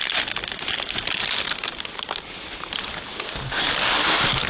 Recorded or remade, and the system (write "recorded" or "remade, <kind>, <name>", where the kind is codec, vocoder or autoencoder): recorded